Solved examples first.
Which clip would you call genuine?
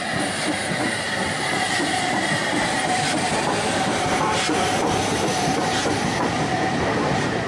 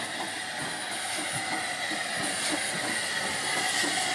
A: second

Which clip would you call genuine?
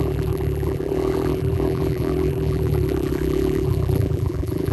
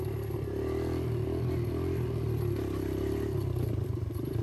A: second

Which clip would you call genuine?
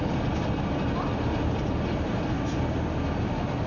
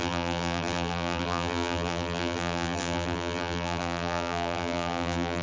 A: first